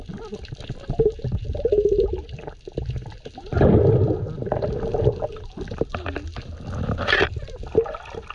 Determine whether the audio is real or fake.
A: real